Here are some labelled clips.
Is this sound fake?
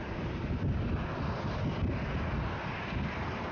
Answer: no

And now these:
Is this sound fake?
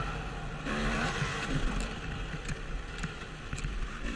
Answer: no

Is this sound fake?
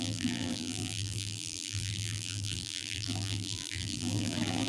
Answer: yes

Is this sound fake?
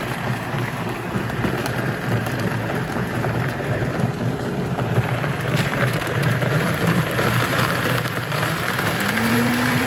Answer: yes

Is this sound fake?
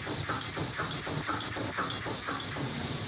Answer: no